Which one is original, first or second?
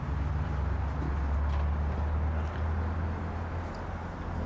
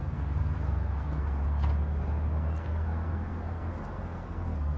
first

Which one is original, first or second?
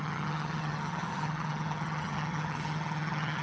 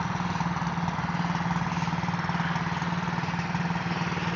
second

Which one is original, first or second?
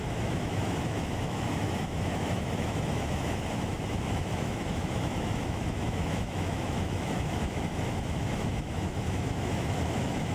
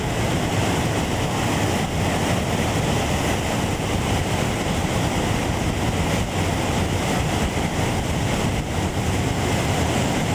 second